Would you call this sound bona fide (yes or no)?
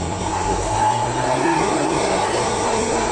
no